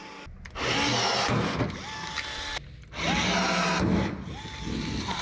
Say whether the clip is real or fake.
real